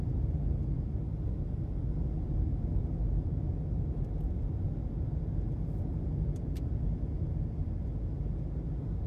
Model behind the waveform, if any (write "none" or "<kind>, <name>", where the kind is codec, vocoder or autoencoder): none